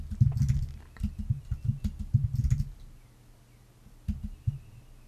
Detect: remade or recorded recorded